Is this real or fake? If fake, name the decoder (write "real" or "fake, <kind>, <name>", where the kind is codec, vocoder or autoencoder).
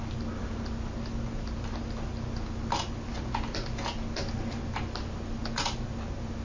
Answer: real